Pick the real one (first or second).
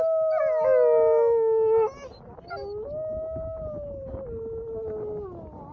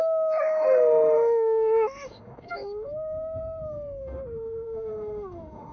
first